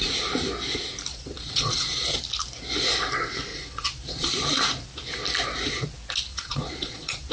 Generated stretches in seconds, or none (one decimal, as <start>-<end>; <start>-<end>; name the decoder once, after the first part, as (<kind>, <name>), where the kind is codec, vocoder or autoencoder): 1.1-2.2 (vocoder, Vocos); 3.5-4.3; 6.3-7.3